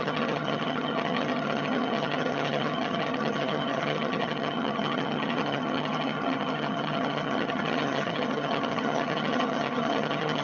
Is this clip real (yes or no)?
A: no